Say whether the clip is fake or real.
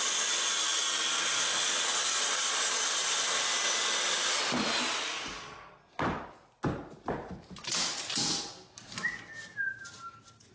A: real